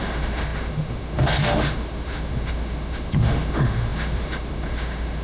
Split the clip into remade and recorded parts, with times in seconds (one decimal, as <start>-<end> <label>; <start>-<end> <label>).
0.0-5.2 remade